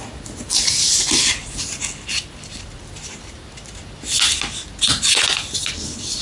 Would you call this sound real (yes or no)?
yes